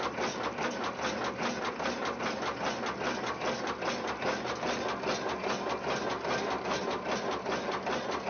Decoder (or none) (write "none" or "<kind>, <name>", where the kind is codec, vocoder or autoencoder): none